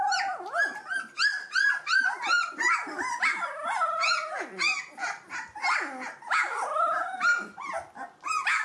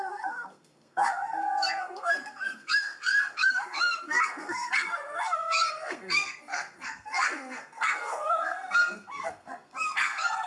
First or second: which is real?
first